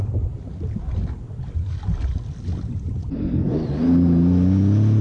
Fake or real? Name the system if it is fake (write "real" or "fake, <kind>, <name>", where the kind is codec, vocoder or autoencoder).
real